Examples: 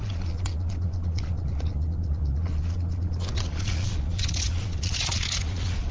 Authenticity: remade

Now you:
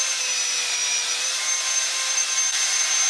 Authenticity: remade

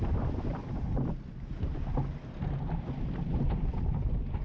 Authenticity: recorded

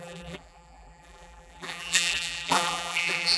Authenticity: remade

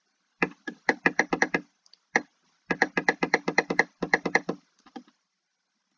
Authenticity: recorded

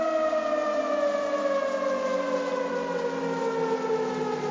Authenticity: recorded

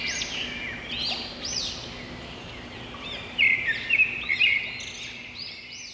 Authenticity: recorded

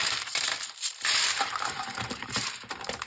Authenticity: remade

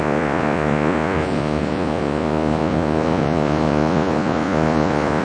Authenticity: remade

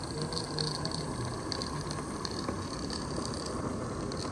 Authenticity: recorded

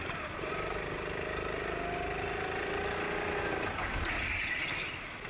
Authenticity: recorded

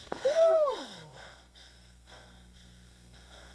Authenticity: remade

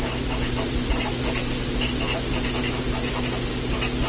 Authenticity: recorded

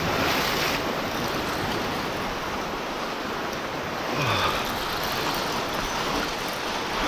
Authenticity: recorded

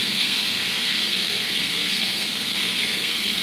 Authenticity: remade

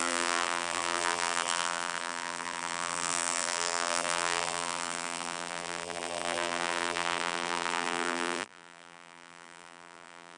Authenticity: remade